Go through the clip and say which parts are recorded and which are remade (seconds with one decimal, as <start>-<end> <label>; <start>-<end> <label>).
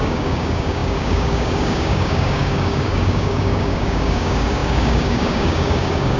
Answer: 0.0-6.2 remade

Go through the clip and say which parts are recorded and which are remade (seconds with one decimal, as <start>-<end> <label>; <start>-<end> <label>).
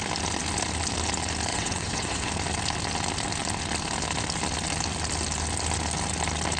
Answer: 0.0-1.5 recorded; 1.5-2.3 remade; 2.3-6.6 recorded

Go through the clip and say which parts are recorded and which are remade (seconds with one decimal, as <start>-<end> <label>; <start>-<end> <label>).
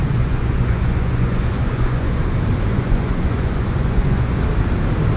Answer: 0.0-2.2 remade; 2.2-2.7 recorded; 2.7-4.4 remade; 4.4-5.2 recorded